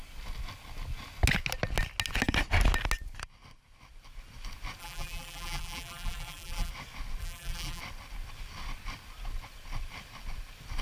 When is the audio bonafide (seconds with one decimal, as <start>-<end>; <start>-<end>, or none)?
0.0-4.8; 6.7-7.2; 7.8-10.8